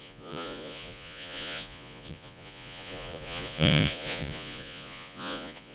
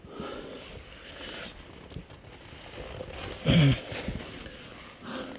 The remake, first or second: first